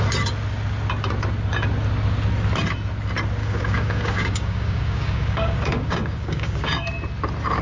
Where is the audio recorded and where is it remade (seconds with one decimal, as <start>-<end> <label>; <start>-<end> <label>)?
0.0-3.4 recorded; 3.4-6.9 remade; 6.9-7.6 recorded